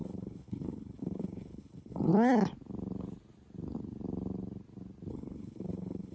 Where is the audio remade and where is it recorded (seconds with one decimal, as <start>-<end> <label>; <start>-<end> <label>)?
0.0-2.1 remade; 2.1-5.1 recorded; 5.1-6.1 remade